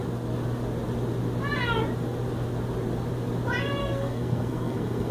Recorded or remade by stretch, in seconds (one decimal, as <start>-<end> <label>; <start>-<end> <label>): 0.0-3.8 recorded; 3.8-5.1 remade